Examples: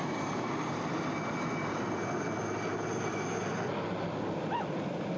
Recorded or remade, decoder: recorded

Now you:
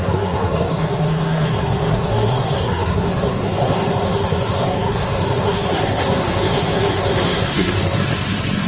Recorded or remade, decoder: remade, codec, SNAC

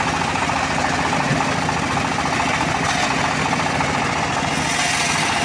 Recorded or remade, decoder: recorded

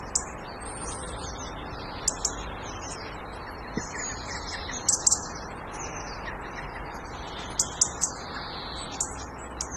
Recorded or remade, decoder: recorded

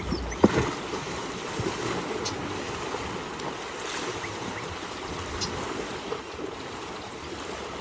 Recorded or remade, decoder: recorded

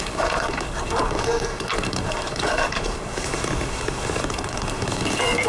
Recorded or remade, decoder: remade, codec, DAC